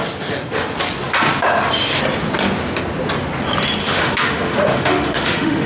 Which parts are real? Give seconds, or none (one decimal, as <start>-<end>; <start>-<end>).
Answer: 0.0-3.8

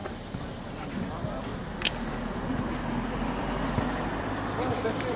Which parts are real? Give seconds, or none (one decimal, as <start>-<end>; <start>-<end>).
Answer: 0.0-1.4; 2.7-4.2

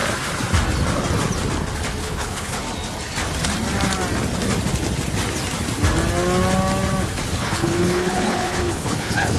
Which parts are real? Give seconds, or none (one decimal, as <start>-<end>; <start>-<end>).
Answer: 0.0-2.0; 2.6-7.3